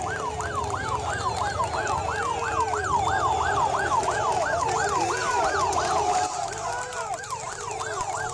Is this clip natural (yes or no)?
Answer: yes